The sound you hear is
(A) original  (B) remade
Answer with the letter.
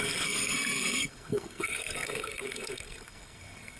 B